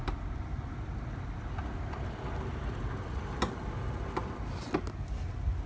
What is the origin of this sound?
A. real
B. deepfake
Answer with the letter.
A